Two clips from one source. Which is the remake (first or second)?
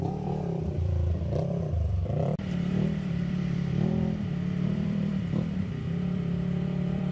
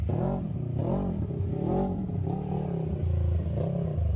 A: first